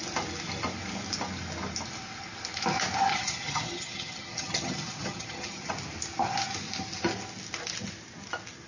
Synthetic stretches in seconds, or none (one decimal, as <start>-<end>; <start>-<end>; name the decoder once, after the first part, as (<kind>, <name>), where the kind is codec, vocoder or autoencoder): 3.1-5.7 (vocoder, HiFi-GAN)